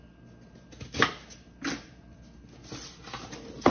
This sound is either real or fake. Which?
real